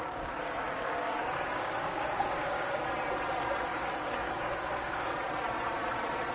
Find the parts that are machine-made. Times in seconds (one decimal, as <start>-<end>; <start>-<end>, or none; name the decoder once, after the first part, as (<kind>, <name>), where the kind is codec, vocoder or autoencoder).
0.0-2.8 (codec, DAC); 3.7-5.1